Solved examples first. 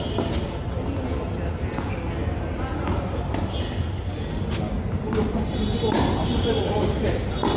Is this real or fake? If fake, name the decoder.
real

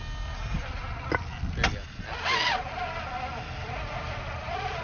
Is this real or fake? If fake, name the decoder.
real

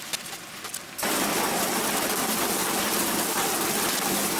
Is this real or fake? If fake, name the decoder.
real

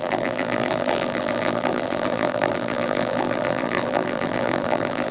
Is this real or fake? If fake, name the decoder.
fake, vocoder, BigVGAN v2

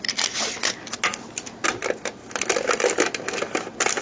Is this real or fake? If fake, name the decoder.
real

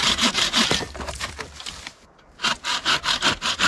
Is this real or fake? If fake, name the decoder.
fake, vocoder, BigVGAN v2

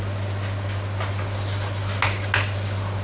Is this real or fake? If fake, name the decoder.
real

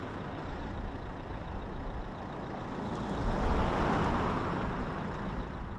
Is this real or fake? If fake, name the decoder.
real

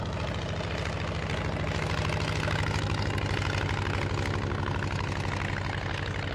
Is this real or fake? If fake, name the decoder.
real